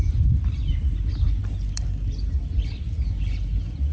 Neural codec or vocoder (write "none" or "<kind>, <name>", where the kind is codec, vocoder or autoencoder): none